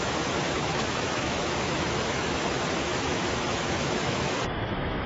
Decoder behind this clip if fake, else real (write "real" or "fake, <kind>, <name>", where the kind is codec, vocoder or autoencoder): fake, autoencoder, DAC-VAE